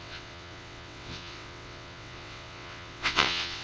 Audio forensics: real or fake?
fake